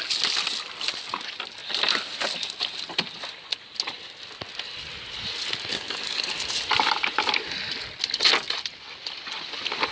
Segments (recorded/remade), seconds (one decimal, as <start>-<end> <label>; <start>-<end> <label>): 0.0-5.7 recorded; 5.7-6.3 remade; 6.3-9.9 recorded

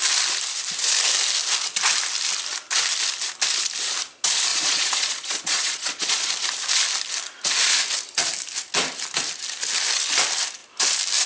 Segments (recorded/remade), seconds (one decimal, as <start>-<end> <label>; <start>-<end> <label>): 0.0-4.5 recorded; 4.5-6.3 remade; 6.3-11.3 recorded

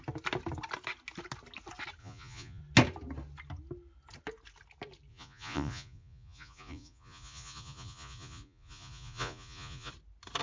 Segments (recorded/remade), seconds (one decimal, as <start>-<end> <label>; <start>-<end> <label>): 0.0-2.0 recorded; 2.0-2.6 remade; 2.6-5.1 recorded; 5.1-9.9 remade; 9.9-10.4 recorded

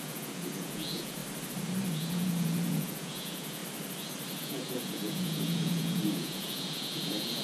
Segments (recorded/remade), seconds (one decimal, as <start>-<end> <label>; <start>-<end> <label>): 0.0-1.2 remade; 1.2-1.9 recorded; 1.9-3.6 remade; 3.6-4.4 recorded; 4.4-7.4 remade

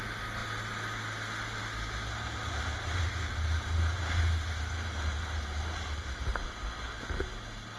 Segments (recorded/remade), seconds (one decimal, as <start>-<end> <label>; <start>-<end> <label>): 0.0-7.8 recorded

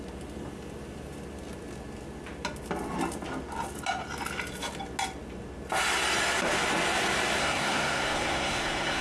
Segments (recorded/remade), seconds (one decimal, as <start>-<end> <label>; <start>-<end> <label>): 0.0-7.4 recorded; 7.4-9.0 remade

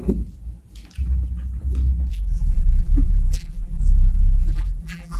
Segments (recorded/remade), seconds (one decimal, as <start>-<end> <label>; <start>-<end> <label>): 0.0-2.1 recorded; 2.1-5.2 remade

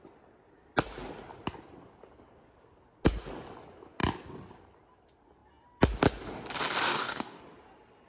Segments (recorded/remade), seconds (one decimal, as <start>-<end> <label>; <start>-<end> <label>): 0.0-6.9 recorded; 6.9-7.4 remade; 7.4-8.1 recorded